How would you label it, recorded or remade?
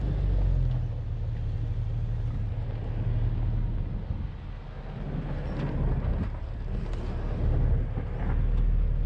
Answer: recorded